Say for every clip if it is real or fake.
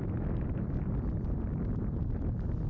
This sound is real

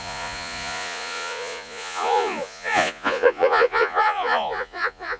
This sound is fake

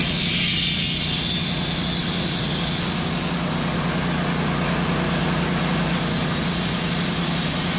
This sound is real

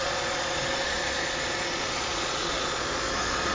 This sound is fake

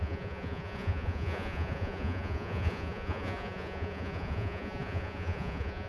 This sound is fake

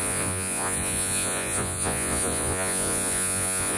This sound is fake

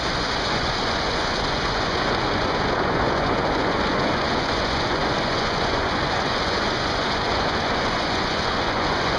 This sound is fake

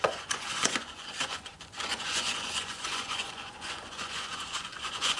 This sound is fake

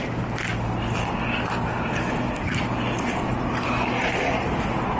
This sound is real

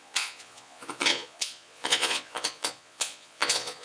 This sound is fake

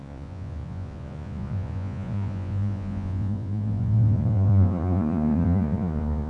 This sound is fake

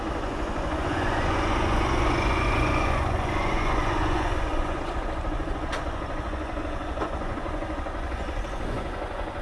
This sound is fake